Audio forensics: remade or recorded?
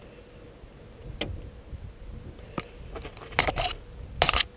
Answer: recorded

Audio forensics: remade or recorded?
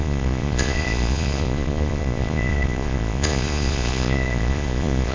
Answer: remade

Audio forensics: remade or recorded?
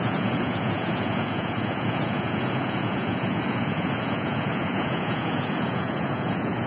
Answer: remade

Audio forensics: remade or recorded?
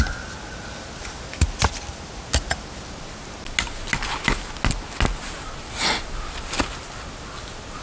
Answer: recorded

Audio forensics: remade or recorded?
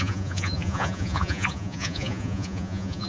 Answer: remade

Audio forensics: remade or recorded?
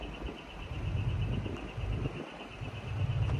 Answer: recorded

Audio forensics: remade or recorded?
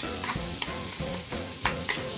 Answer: remade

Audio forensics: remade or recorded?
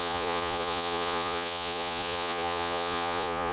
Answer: remade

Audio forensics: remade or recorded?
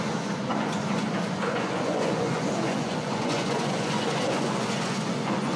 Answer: remade